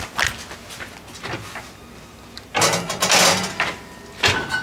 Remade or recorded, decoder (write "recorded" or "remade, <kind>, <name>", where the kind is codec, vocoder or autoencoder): recorded